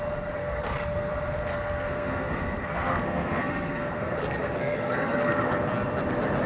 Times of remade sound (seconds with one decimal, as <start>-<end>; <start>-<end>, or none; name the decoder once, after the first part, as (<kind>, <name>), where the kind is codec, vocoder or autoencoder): 0.4-1.1 (codec, SNAC); 1.5-5.4